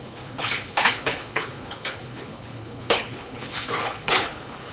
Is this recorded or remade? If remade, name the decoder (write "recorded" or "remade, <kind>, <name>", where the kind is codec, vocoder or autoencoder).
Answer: remade, codec, HILCodec